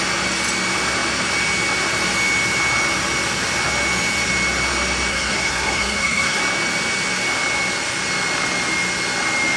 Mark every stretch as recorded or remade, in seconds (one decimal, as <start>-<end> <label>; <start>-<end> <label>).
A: 0.0-5.1 recorded; 5.1-6.4 remade; 6.4-9.6 recorded